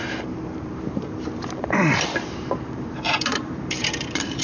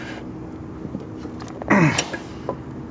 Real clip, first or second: second